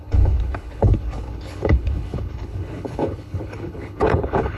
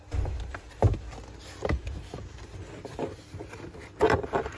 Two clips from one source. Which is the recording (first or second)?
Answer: second